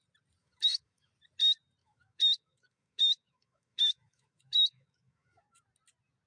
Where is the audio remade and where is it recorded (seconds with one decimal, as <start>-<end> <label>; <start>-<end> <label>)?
0.0-0.4 recorded; 0.4-1.1 remade; 1.1-1.8 recorded; 1.8-5.6 remade; 5.6-6.3 recorded